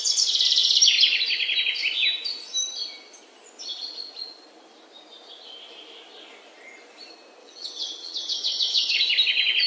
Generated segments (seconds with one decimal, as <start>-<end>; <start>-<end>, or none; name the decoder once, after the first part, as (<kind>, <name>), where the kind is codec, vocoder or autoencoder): 7.4-9.1 (vocoder, WaveNeXt)